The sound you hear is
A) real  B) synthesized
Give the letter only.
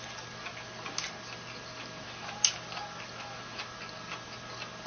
A